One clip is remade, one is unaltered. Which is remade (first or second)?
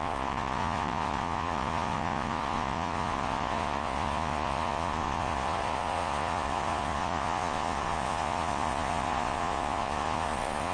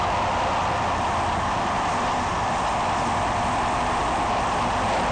first